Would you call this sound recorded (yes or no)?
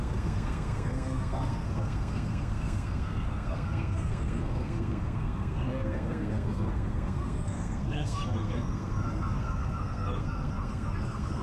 no